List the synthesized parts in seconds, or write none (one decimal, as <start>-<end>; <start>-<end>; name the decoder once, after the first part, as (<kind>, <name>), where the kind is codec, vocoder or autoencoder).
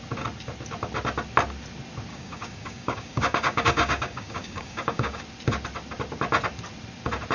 2.1-5.2 (codec, DAC)